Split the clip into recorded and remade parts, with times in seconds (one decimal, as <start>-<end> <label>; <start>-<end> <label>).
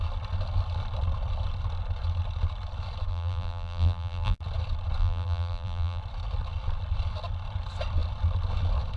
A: 0.0-3.1 recorded; 3.1-4.4 remade; 4.4-5.0 recorded; 5.0-6.0 remade; 6.0-9.0 recorded